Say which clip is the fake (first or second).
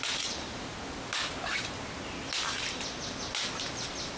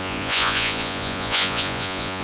second